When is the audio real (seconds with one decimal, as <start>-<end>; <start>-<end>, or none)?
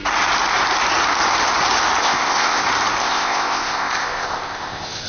0.0-2.0; 2.6-3.0